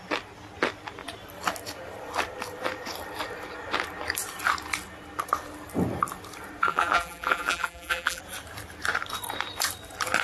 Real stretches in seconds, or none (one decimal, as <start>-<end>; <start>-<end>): 0.0-6.7; 8.2-10.2